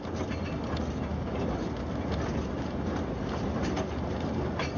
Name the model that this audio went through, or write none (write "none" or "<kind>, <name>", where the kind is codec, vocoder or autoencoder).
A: none